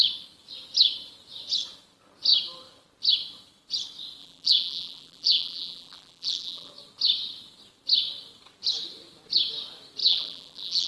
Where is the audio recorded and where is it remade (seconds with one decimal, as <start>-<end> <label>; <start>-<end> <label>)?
0.0-4.2 recorded; 4.2-6.7 remade; 6.7-10.0 recorded; 10.0-10.9 remade